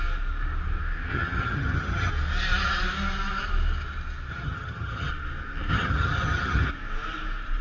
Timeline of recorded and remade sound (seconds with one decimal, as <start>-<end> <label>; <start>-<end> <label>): 0.0-1.1 recorded; 1.1-2.1 remade; 2.1-4.3 recorded; 4.3-5.1 remade; 5.1-5.7 recorded; 5.7-6.7 remade; 6.7-7.6 recorded